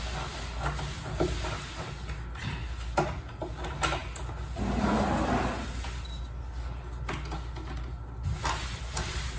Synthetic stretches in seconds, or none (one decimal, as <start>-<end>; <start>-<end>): none